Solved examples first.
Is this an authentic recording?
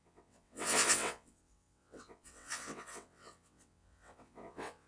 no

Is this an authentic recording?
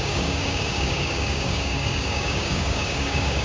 no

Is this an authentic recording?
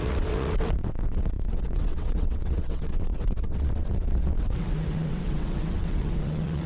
no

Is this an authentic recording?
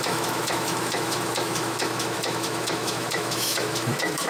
no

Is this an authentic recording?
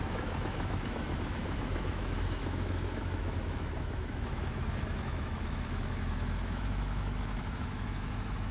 no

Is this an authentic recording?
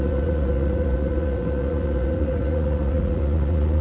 no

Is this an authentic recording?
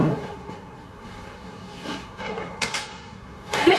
no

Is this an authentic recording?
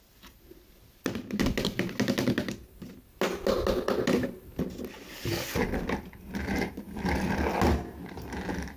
yes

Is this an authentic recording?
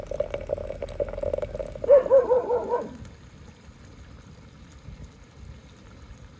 yes